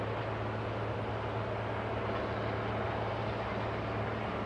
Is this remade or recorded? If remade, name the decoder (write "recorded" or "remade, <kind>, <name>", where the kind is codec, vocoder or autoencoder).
recorded